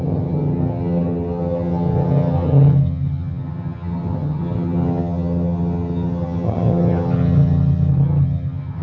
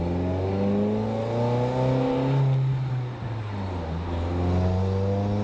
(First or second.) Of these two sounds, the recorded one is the second